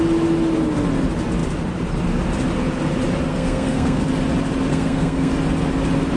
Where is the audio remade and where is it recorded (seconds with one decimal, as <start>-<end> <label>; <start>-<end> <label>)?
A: 0.0-3.3 recorded; 3.3-4.0 remade; 4.0-4.7 recorded; 4.7-5.3 remade; 5.3-6.2 recorded

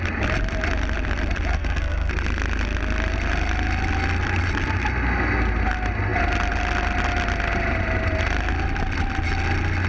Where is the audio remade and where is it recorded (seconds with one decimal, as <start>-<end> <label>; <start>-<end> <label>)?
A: 0.0-1.5 recorded; 1.5-2.1 remade; 2.1-9.9 recorded

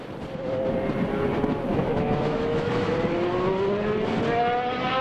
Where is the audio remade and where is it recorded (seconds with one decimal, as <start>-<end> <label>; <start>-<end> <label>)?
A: 0.0-1.7 recorded; 1.7-2.9 remade; 2.9-5.0 recorded